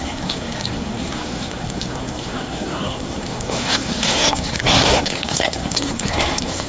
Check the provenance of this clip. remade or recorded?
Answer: remade